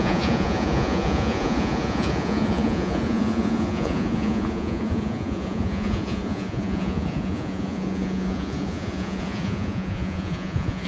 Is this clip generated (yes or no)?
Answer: yes